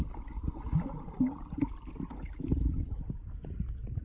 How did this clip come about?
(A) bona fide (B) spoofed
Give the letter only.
A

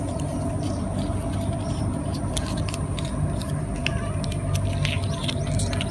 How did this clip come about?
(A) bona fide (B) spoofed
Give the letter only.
A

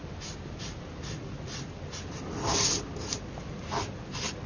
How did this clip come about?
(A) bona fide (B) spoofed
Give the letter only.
A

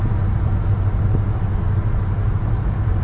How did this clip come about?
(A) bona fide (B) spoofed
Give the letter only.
A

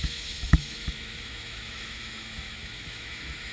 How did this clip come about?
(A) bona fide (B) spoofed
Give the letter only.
B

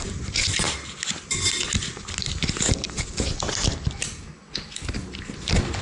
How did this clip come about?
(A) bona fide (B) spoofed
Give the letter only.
A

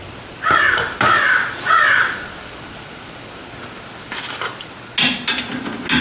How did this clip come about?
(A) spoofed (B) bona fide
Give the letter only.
B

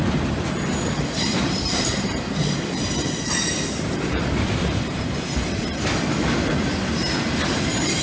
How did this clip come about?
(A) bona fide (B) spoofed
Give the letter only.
B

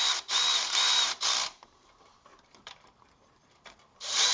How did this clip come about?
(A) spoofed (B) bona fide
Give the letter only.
A